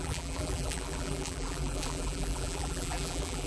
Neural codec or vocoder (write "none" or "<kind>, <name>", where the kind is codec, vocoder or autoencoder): vocoder, BigVGAN v2